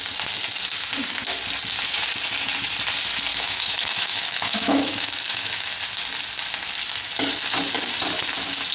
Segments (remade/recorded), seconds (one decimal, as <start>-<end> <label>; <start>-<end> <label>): 0.0-3.3 recorded; 3.3-5.7 remade; 5.7-8.7 recorded